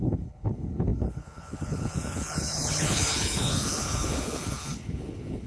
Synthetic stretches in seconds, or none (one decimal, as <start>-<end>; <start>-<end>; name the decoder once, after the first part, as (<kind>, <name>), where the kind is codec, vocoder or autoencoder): 0.0-5.5 (codec, HILCodec)